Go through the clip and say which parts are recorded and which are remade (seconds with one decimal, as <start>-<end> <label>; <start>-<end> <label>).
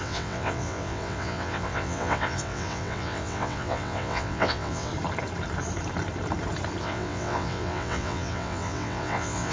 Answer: 0.0-4.9 remade; 4.9-6.8 recorded; 6.8-9.5 remade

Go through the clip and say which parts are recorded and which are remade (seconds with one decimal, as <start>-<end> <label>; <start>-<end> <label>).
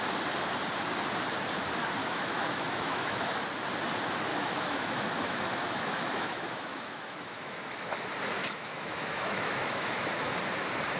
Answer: 0.0-2.0 recorded; 2.0-3.3 remade; 3.3-4.3 recorded; 4.3-7.7 remade; 7.7-8.4 recorded; 8.4-10.3 remade; 10.3-11.0 recorded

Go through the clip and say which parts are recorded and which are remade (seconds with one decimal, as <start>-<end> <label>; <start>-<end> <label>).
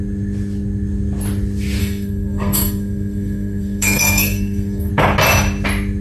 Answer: 0.0-1.8 recorded; 1.8-4.9 remade; 4.9-6.0 recorded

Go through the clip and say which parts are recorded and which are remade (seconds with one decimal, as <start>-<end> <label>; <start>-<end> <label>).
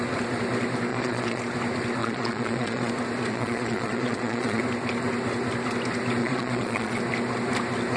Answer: 0.0-0.9 recorded; 0.9-1.4 remade; 1.4-2.0 recorded; 2.0-2.9 remade; 2.9-3.3 recorded; 3.3-4.6 remade; 4.6-6.2 recorded; 6.2-7.0 remade; 7.0-8.0 recorded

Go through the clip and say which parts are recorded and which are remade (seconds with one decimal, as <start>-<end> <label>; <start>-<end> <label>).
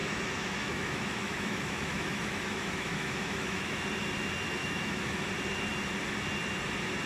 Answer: 0.0-3.8 remade; 3.8-4.6 recorded; 4.6-5.3 remade; 5.3-7.1 recorded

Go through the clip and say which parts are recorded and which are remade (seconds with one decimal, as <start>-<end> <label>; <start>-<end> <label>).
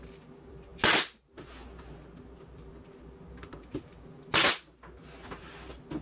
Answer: 0.0-6.0 recorded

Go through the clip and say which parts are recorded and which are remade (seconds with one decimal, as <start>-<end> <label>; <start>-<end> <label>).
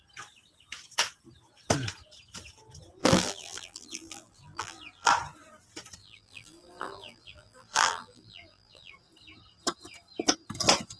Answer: 0.0-3.0 recorded; 3.0-5.1 remade; 5.1-6.0 recorded; 6.0-8.9 remade; 8.9-11.0 recorded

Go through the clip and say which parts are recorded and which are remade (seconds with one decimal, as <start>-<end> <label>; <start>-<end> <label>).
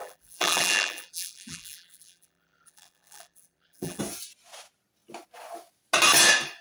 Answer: 0.0-4.0 remade; 4.0-6.6 recorded